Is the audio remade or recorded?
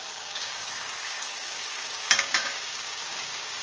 remade